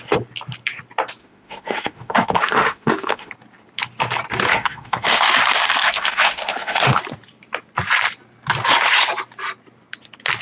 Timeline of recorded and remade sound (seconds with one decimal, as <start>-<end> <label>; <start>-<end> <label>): 0.0-1.2 recorded; 1.2-3.3 remade; 3.3-4.5 recorded; 4.5-5.3 remade; 5.3-5.8 recorded; 5.8-7.0 remade; 7.0-10.4 recorded